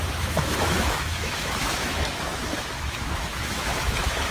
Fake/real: fake